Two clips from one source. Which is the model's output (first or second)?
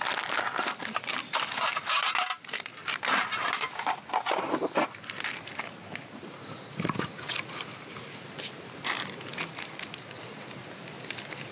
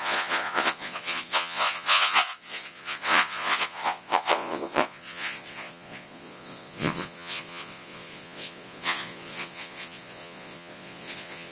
second